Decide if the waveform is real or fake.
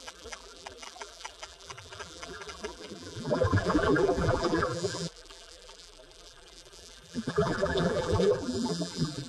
fake